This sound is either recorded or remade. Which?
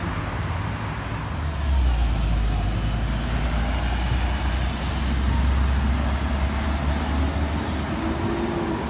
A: recorded